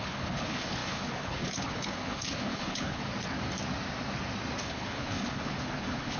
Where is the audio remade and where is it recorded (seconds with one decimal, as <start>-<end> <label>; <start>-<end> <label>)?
0.0-3.0 remade; 3.0-4.6 recorded; 4.6-6.2 remade